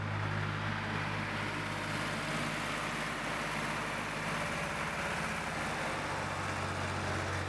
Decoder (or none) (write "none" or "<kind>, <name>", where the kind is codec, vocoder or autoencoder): none